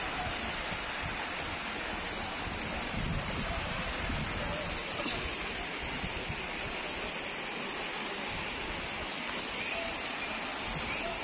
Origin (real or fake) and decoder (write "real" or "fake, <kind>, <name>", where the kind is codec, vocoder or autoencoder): real